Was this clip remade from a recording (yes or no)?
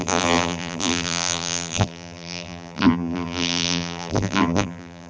yes